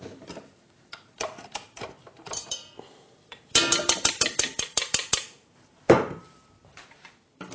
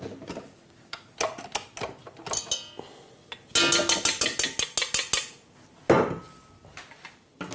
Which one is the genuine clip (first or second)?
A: second